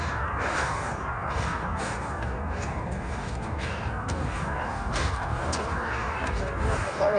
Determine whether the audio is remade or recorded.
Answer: remade